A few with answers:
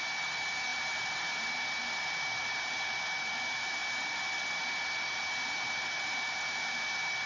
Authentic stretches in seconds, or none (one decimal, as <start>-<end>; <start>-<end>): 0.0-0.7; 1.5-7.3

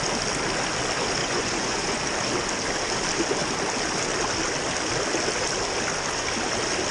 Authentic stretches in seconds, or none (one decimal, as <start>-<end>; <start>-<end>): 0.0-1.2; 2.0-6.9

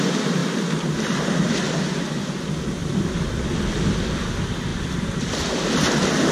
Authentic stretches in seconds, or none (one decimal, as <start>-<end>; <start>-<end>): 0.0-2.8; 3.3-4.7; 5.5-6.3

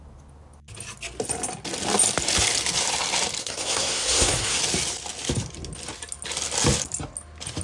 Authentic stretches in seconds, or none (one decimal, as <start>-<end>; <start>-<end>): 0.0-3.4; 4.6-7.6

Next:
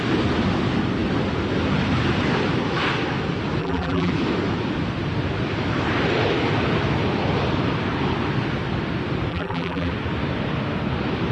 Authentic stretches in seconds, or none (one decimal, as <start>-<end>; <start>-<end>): 0.0-3.6; 4.1-9.3; 9.9-11.3